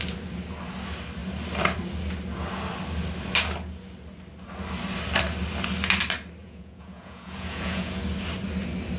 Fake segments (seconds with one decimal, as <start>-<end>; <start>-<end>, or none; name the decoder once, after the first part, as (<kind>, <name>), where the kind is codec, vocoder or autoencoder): 6.4-8.0 (vocoder, Vocos)

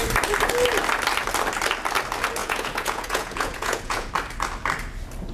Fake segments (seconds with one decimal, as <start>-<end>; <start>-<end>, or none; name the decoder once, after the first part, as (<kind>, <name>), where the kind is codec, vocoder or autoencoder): 2.4-4.1 (vocoder, Vocos)

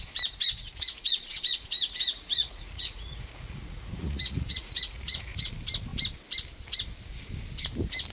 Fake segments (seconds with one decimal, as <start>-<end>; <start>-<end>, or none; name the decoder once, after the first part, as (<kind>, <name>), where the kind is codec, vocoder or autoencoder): 0.6-5.5 (vocoder, Vocos)

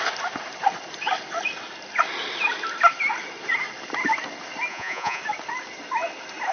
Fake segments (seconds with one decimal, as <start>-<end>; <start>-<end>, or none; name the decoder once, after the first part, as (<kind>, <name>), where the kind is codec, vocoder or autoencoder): 4.7-5.2 (vocoder, Vocos)

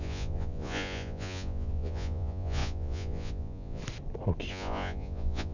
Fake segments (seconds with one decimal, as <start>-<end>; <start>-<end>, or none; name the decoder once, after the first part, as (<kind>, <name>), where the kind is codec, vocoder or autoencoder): 0.0-3.8 (vocoder, Vocos); 4.5-5.5

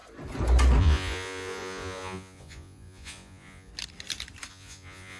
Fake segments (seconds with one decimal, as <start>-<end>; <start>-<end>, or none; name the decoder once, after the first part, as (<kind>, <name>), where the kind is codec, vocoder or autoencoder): 0.8-3.7 (vocoder, Vocos); 4.5-5.2

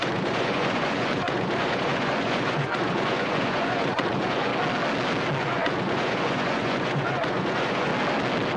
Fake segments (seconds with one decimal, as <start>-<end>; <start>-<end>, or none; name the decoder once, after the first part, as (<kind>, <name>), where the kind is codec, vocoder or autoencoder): 0.0-4.5 (vocoder, Vocos); 5.4-7.9